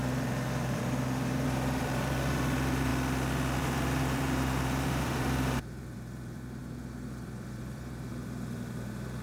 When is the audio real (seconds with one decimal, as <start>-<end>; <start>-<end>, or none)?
2.9-3.6